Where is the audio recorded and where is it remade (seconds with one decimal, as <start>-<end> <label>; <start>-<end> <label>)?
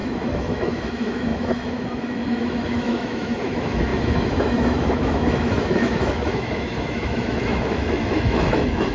0.0-8.9 remade